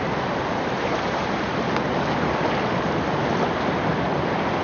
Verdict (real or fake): real